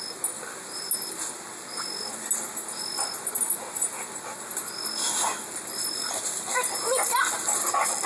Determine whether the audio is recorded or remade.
recorded